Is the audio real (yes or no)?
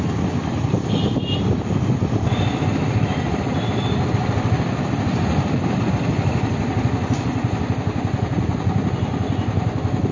no